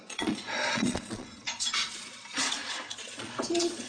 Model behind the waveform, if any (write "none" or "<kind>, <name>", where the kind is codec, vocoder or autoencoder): vocoder, Vocos